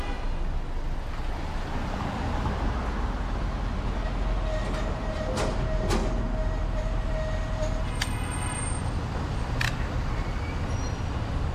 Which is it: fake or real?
real